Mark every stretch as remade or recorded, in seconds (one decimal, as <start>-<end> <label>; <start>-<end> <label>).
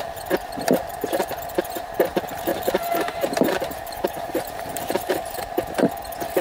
0.0-2.5 recorded; 2.5-5.4 remade; 5.4-6.4 recorded